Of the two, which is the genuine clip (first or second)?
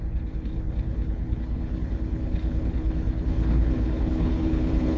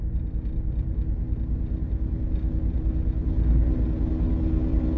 second